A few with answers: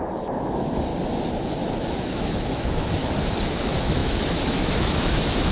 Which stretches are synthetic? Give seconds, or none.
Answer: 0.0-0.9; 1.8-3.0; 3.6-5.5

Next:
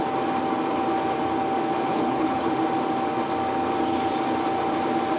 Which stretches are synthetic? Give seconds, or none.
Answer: 1.9-2.5

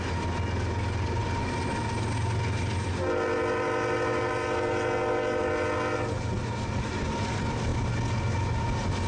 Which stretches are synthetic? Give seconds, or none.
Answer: none

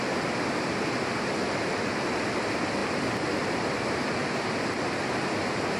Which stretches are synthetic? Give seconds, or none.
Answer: 2.8-4.4

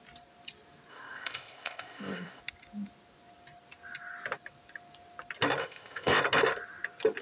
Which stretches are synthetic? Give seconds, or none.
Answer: 0.9-2.4; 5.6-6.2